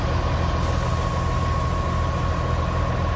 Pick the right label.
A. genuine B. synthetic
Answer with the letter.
A